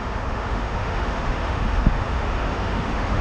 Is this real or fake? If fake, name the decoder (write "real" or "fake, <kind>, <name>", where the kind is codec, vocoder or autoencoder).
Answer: fake, autoencoder, DAC-VAE